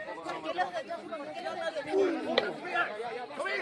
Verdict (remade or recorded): remade